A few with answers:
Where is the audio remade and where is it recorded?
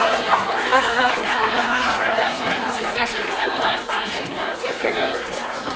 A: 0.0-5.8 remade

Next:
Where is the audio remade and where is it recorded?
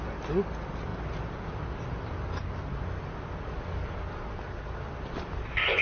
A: 0.0-5.8 recorded